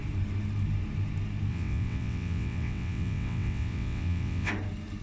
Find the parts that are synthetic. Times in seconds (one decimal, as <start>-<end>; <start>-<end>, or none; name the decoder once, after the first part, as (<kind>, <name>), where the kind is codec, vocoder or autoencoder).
1.5-4.5 (vocoder, WaveNeXt)